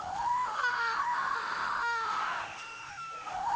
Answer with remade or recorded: remade